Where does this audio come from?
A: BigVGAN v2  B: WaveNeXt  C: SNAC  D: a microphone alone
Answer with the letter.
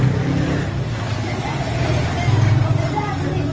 D